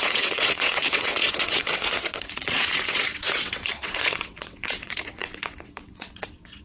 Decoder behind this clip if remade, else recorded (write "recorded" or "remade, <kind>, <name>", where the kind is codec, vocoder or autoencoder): remade, vocoder, WaveNeXt